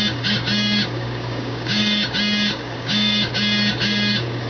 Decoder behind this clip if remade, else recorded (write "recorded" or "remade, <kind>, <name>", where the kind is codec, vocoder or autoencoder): remade, codec, DAC